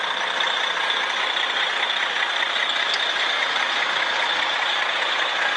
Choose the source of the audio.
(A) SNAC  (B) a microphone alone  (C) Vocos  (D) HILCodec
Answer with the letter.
B